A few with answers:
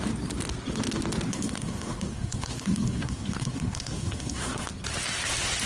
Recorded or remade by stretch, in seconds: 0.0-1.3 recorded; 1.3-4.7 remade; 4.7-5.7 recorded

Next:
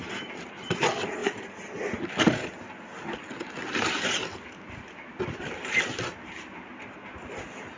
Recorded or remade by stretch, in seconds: 0.0-7.8 recorded

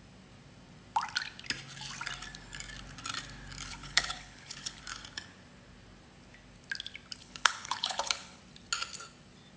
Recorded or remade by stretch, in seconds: 0.0-3.7 recorded; 3.7-4.8 remade; 4.8-7.2 recorded; 7.2-8.4 remade; 8.4-9.6 recorded

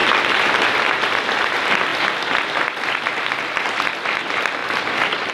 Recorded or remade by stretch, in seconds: 0.0-5.3 recorded

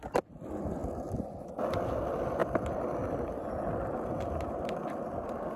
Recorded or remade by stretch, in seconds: 0.0-0.8 recorded; 0.8-1.5 remade; 1.5-2.4 recorded; 2.4-5.6 remade